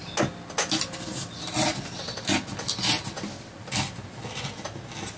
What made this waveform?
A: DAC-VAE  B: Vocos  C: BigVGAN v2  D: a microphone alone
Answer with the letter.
D